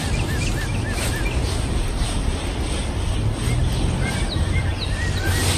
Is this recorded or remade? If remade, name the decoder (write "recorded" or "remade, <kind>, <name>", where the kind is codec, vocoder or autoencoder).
recorded